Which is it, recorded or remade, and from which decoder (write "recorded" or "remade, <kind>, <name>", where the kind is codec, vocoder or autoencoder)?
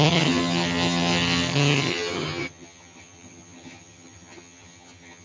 remade, vocoder, HiFi-GAN